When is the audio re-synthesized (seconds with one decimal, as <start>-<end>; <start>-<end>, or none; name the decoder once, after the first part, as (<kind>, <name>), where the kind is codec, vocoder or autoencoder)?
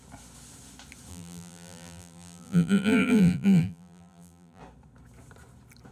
1.1-4.6 (vocoder, BigVGAN v2)